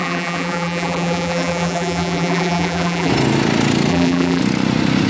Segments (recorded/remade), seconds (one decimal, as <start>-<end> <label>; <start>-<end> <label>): 0.0-3.1 remade; 3.1-3.9 recorded; 3.9-4.4 remade; 4.4-5.1 recorded

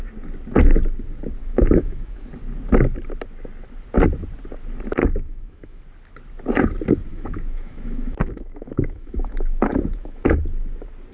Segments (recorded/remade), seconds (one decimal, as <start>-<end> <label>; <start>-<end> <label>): 0.0-1.4 recorded; 1.4-2.3 remade; 2.3-5.0 recorded; 5.0-5.8 remade; 5.8-7.1 recorded; 7.1-10.4 remade; 10.4-11.1 recorded